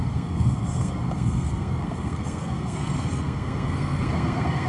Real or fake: fake